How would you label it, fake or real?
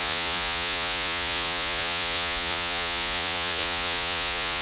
fake